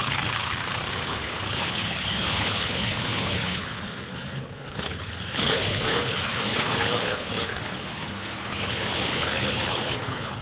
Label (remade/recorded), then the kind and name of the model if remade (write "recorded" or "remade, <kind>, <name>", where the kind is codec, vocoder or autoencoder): remade, codec, HILCodec